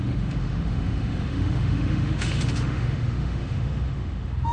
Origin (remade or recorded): remade